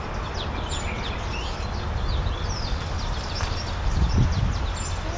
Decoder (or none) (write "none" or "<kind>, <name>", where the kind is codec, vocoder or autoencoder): none